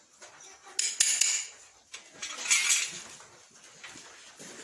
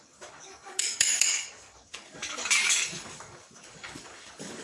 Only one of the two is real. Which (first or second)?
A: first